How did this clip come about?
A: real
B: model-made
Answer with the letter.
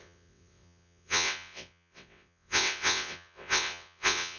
B